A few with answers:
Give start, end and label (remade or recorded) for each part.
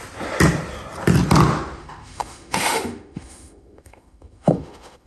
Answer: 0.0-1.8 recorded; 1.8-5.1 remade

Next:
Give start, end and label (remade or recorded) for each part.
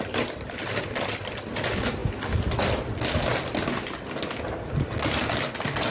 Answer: 0.0-5.9 recorded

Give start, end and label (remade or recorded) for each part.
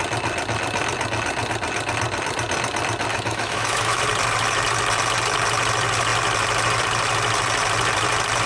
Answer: 0.0-3.1 recorded; 3.1-4.0 remade; 4.0-8.5 recorded